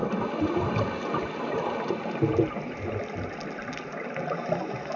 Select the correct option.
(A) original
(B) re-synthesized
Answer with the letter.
A